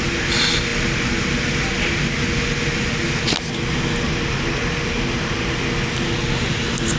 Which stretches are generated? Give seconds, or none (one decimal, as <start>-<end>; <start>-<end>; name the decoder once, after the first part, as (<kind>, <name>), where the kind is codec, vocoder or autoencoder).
none